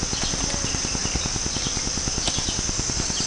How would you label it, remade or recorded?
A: recorded